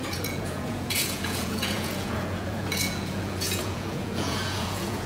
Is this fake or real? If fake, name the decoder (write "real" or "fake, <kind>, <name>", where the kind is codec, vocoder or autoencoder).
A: fake, vocoder, Vocos